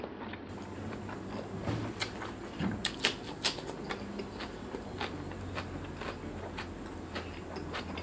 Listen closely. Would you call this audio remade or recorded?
recorded